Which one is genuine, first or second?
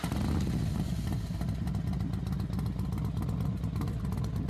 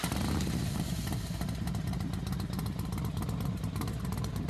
first